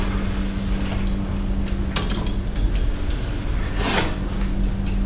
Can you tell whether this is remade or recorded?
recorded